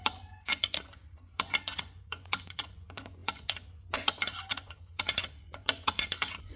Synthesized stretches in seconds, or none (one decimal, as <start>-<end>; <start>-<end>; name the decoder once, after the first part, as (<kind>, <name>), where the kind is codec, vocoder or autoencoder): 0.0-6.6 (vocoder, Vocos)